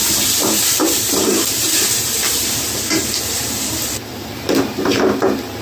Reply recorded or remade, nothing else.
remade